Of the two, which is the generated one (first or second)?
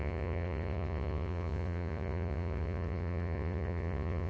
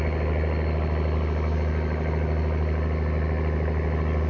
first